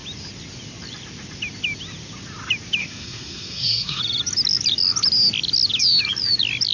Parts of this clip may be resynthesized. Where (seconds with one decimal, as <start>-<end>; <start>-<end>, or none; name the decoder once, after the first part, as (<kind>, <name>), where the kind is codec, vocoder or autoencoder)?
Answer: 2.8-4.0 (codec, SNAC)